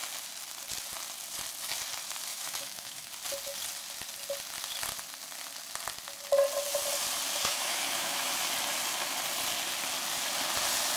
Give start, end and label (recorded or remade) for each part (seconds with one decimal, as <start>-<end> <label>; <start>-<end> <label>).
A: 0.0-2.3 recorded; 2.3-3.1 remade; 3.1-7.4 recorded; 7.4-8.3 remade; 8.3-11.0 recorded

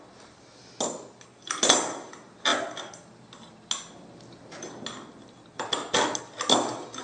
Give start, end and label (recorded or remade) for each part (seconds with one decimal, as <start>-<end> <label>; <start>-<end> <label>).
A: 0.0-7.0 recorded

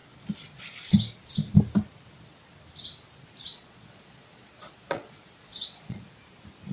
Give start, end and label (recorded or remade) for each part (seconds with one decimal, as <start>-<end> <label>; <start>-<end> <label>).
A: 0.0-3.5 recorded; 3.5-6.0 remade; 6.0-6.7 recorded

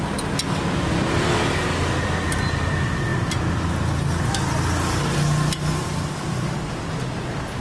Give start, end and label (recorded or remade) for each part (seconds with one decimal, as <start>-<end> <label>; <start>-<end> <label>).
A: 0.0-7.6 recorded

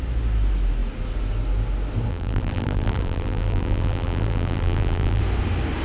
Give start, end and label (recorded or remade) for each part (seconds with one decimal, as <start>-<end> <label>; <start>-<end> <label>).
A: 0.0-2.1 recorded; 2.1-5.2 remade; 5.2-5.8 recorded

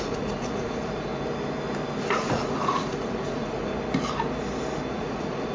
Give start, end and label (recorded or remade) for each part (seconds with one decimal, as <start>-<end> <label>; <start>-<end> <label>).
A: 0.0-1.1 remade; 1.1-2.0 recorded; 2.0-3.7 remade; 3.7-4.9 recorded; 4.9-5.5 remade

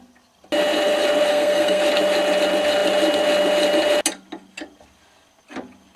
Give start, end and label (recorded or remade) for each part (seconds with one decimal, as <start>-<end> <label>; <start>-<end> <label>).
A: 0.0-1.3 recorded; 1.3-1.8 remade; 1.8-6.0 recorded

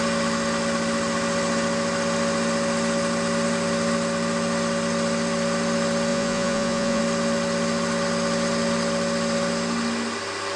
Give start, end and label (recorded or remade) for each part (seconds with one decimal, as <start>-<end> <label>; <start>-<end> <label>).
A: 0.0-6.1 recorded; 6.1-7.0 remade; 7.0-10.6 recorded